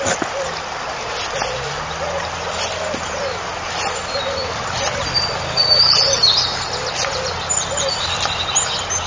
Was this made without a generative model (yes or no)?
yes